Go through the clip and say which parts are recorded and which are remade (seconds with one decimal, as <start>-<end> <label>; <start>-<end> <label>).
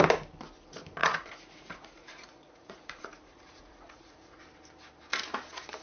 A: 0.0-1.0 recorded; 1.0-4.4 remade; 4.4-5.8 recorded